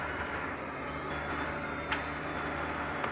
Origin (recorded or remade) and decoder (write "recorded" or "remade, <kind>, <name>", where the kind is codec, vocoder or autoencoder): recorded